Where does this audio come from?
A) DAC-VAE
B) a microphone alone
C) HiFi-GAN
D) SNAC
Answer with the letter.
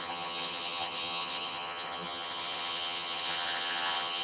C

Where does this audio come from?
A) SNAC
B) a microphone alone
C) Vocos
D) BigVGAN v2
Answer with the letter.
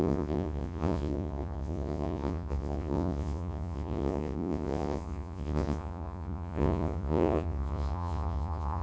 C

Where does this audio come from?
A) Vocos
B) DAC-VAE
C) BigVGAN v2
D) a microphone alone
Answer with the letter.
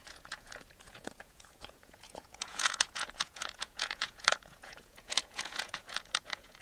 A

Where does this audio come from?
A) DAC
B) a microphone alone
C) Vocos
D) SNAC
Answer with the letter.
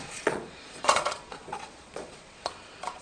C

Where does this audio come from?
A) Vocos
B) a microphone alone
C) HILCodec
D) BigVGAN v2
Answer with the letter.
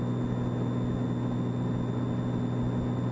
B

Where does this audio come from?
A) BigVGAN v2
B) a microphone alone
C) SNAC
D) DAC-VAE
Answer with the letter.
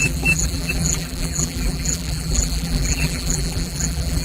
A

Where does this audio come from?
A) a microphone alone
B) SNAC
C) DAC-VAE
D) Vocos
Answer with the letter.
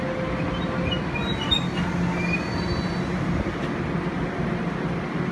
A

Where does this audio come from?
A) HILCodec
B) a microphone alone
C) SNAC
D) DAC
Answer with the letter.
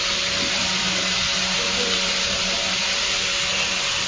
B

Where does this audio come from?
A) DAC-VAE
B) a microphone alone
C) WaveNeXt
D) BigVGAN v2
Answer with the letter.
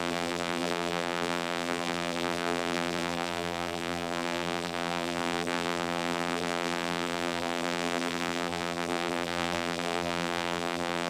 D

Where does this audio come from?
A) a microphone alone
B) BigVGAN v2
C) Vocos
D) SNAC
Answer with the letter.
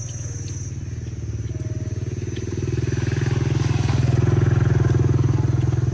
A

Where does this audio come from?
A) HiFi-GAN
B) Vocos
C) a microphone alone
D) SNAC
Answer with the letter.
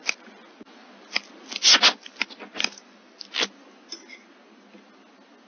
C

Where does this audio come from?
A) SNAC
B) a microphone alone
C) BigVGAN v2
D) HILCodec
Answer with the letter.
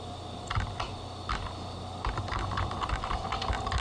B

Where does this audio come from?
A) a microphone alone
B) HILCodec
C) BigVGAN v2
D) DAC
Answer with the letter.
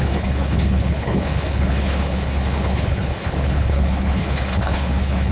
B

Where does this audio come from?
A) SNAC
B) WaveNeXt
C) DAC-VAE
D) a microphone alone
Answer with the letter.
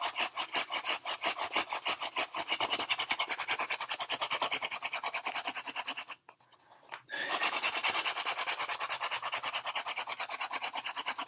D